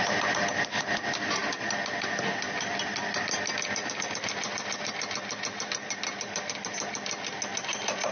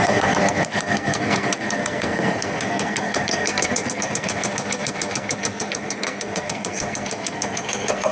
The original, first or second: first